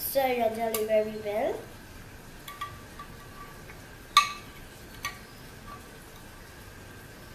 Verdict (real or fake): real